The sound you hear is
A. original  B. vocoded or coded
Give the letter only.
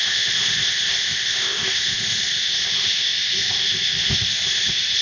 B